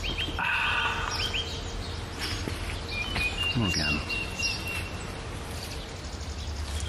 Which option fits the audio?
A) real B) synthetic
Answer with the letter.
A